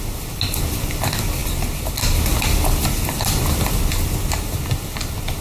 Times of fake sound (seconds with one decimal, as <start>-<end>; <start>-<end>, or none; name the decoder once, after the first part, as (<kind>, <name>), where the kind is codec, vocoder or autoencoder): none